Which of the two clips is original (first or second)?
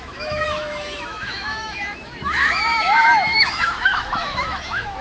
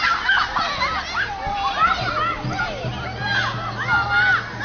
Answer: second